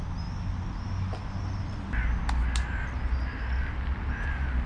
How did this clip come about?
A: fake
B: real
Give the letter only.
B